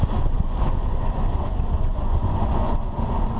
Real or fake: fake